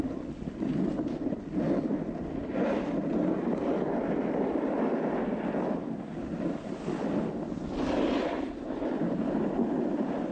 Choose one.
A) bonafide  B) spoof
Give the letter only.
A